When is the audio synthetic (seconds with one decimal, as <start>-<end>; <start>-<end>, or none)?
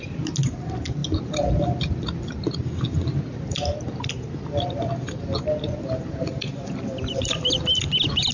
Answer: none